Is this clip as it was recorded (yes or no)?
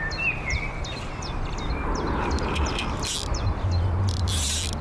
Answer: yes